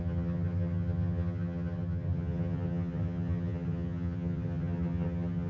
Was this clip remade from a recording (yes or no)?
yes